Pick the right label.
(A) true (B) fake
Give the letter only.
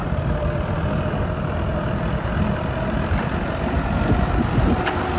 B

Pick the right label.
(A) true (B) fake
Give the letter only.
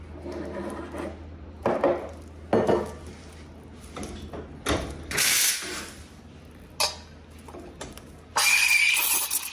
A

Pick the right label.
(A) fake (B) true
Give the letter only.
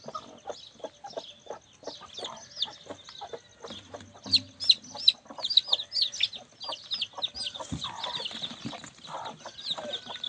B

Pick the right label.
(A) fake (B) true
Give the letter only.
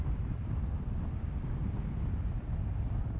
A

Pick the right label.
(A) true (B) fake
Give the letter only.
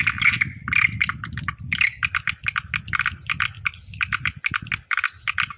A